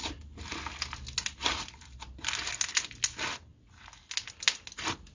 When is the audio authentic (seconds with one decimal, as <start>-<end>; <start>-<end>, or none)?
0.0-5.1

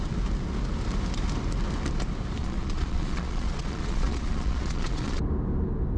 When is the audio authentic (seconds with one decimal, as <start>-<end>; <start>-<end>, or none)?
0.0-2.4; 5.2-6.0

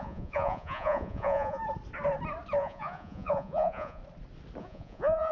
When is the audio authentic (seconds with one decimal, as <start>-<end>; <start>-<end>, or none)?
1.6-2.6; 4.0-4.6